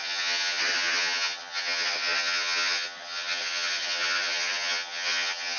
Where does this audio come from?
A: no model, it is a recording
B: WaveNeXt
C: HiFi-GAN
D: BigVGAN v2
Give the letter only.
C